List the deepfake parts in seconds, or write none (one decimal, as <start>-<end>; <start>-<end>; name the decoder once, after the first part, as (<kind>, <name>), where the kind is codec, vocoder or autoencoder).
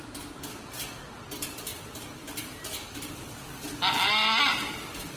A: 1.7-3.2 (vocoder, BigVGAN v2)